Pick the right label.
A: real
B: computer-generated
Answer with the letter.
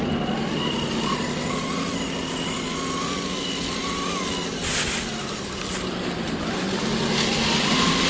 A